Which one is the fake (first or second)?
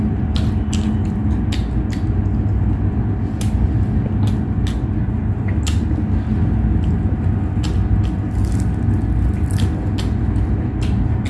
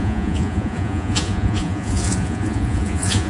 second